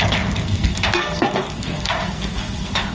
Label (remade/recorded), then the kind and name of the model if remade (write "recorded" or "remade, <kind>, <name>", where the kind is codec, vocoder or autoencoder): remade, codec, SNAC